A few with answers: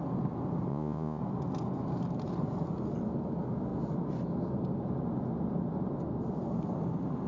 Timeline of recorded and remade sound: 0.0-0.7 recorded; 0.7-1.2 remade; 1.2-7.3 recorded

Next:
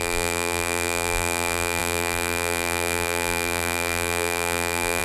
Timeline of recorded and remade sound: 0.0-5.0 remade

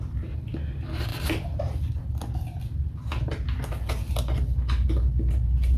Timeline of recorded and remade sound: 0.0-1.1 recorded; 1.1-1.8 remade; 1.8-5.8 recorded

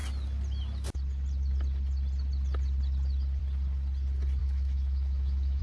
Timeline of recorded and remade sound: 0.0-4.4 recorded; 4.4-5.6 remade

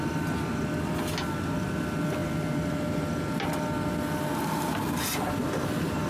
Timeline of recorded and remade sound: 0.0-6.1 recorded